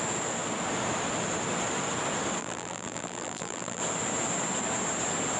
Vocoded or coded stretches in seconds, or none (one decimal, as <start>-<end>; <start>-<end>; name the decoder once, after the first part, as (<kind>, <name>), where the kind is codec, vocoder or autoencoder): 2.4-3.8 (vocoder, BigVGAN v2)